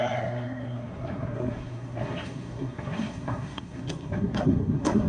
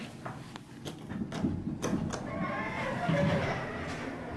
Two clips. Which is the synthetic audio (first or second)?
first